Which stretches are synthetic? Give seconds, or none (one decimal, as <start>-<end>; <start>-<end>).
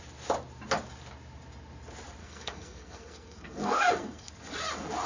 2.2-4.3